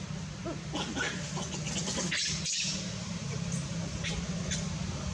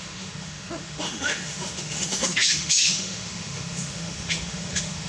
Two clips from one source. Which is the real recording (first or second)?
first